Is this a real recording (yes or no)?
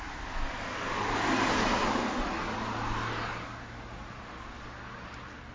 yes